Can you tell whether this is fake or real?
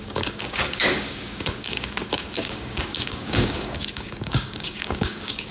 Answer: fake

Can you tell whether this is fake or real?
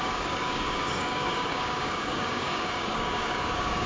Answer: fake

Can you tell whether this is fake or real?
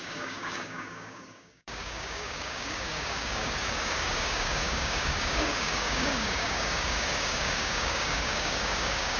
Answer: fake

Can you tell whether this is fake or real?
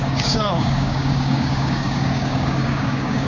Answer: fake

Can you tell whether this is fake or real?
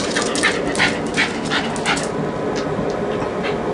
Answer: real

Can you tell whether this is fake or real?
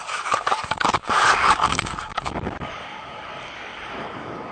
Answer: fake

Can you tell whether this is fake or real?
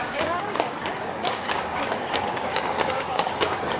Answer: fake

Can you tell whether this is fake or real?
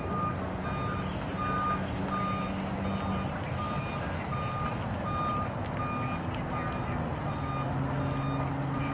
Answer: real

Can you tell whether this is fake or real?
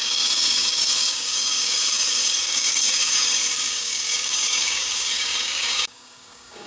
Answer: fake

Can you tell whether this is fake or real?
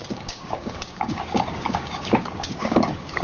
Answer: fake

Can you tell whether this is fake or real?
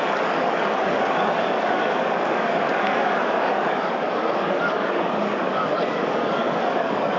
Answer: fake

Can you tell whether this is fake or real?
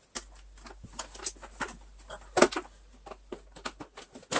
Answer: real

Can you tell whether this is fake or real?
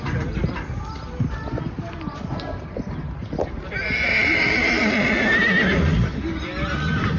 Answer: real